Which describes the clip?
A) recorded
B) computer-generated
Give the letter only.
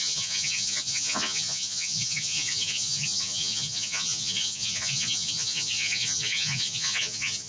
B